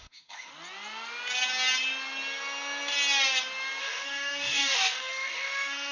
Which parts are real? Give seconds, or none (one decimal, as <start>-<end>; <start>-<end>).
0.5-3.8